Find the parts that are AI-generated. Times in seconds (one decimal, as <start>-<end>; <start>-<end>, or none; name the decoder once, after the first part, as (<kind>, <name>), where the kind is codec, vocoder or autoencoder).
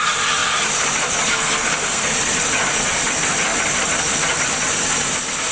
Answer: 1.3-2.1 (codec, SNAC)